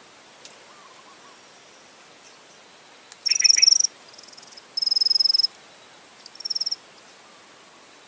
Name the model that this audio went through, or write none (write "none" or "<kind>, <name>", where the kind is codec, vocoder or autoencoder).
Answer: none